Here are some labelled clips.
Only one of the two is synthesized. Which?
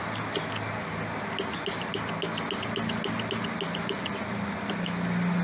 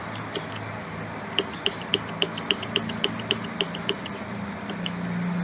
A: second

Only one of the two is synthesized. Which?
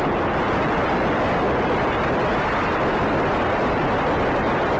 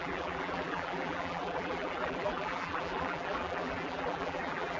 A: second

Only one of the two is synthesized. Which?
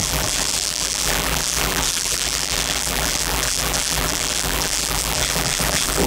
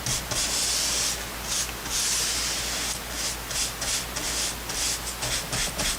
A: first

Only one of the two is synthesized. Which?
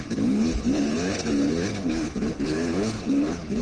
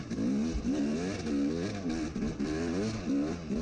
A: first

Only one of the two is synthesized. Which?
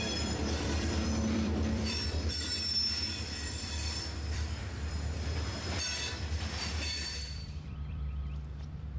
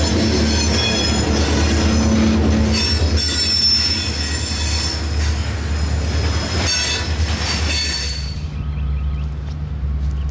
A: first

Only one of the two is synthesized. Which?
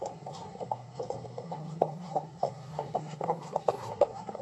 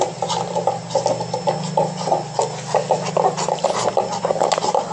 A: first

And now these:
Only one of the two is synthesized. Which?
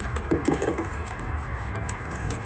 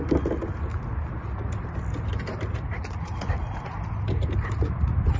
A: first